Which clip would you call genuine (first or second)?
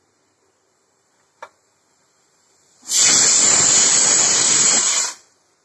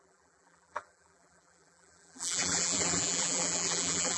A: first